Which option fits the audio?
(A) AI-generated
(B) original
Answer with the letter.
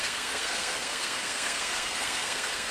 A